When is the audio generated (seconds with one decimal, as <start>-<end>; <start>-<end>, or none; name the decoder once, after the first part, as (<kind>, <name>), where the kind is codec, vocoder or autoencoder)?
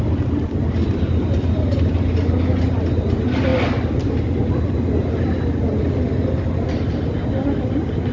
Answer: none